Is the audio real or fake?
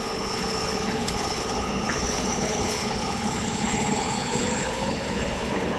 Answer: fake